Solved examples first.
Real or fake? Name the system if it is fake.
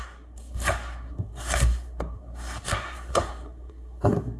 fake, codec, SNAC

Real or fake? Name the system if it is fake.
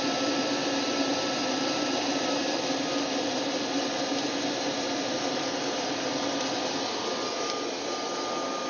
real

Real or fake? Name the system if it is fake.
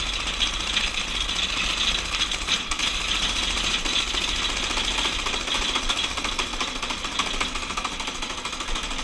real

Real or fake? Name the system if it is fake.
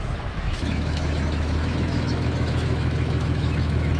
fake, autoencoder, DAC-VAE